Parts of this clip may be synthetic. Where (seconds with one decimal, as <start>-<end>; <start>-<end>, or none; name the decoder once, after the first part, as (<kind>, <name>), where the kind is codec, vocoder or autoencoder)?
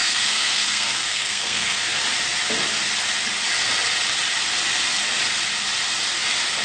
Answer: 0.0-2.0 (codec, SNAC)